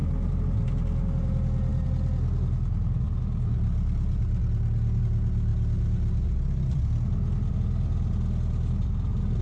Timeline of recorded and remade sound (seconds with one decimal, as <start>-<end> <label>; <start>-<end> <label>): 0.0-9.4 recorded